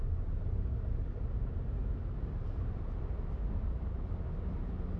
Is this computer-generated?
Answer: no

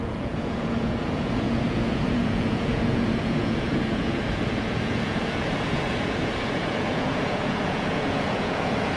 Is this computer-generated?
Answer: yes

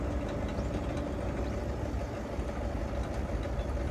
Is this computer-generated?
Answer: no